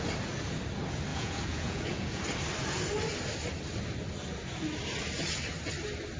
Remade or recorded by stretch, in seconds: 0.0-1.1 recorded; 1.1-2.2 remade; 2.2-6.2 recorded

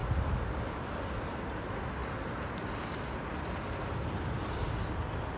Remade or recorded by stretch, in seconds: 0.0-5.4 recorded